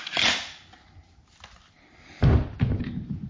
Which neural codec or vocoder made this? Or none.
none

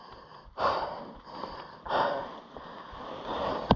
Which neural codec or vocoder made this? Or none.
none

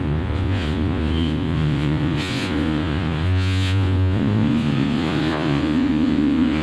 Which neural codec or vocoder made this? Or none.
vocoder, Vocos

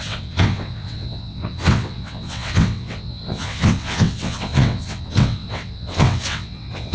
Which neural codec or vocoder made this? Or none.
vocoder, WaveNeXt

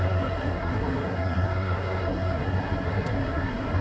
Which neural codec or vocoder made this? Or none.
codec, SNAC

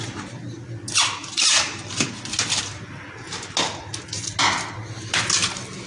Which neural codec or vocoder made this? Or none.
none